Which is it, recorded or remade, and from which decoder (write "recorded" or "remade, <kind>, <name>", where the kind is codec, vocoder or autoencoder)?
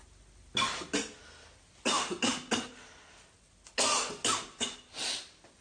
recorded